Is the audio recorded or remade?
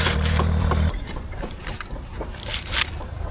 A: remade